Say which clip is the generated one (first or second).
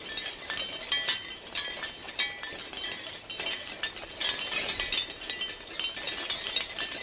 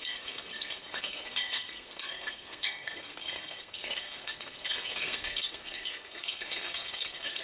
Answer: second